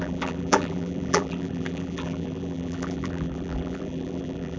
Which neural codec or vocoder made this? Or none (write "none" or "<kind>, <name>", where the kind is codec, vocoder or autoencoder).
vocoder, BigVGAN v2